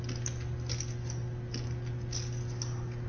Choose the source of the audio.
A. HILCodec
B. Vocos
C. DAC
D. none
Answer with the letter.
D